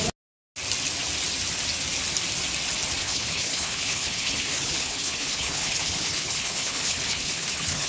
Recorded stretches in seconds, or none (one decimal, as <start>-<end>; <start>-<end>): 0.0-3.0